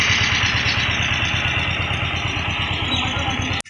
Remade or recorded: recorded